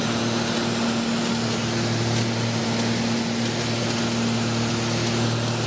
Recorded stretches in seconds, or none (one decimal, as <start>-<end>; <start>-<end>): 0.0-5.7